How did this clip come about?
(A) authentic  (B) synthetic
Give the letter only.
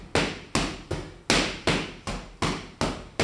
A